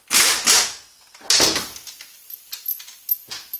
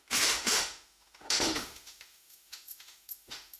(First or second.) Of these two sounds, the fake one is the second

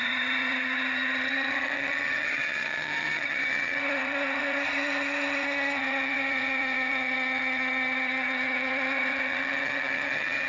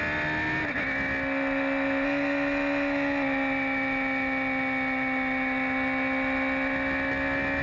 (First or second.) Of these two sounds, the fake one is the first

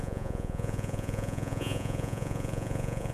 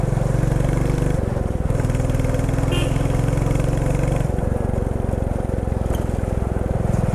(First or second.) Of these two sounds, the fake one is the first